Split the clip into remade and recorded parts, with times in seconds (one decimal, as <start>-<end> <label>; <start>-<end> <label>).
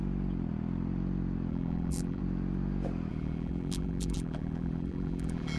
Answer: 0.0-1.5 recorded; 1.5-2.2 remade; 2.2-3.1 recorded; 3.1-5.6 remade